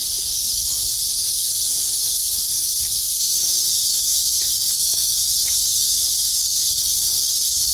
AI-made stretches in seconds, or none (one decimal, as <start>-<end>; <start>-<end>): 0.0-7.7

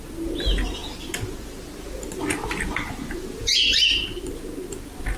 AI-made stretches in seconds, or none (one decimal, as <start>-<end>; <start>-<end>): none

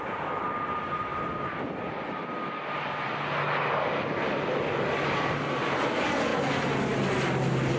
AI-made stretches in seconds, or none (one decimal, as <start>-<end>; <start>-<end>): none

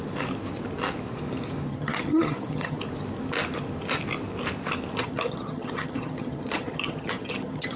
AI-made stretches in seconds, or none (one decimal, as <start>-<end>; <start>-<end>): 1.7-2.8; 5.0-7.8